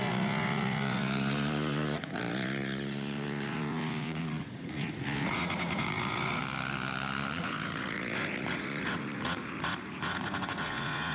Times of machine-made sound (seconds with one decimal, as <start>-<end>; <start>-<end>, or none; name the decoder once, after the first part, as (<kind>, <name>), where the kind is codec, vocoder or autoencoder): 0.0-6.4 (vocoder, Vocos); 7.4-11.1